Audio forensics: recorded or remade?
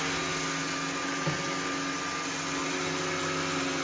recorded